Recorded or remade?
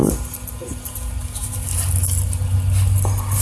remade